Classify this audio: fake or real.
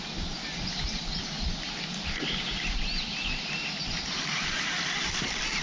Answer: real